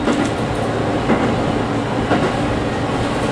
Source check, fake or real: real